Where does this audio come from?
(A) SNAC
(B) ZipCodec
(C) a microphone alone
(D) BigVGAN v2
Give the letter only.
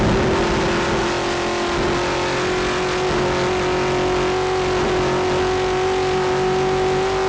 C